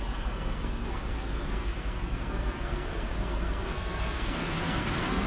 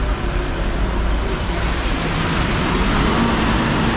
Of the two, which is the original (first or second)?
second